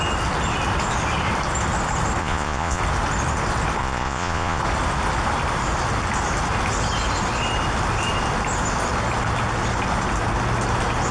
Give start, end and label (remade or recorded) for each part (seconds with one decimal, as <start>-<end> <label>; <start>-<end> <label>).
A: 0.0-2.2 recorded; 2.2-2.8 remade; 2.8-3.8 recorded; 3.8-4.6 remade; 4.6-11.1 recorded

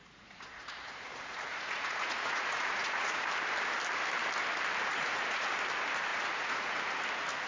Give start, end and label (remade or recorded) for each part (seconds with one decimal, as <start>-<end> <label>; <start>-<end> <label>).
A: 0.0-3.3 remade; 3.3-4.9 recorded; 4.9-5.5 remade; 5.5-6.1 recorded; 6.1-6.8 remade; 6.8-7.5 recorded